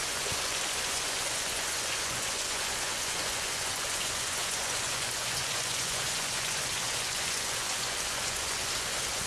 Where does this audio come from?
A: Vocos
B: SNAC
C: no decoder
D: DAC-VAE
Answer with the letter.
A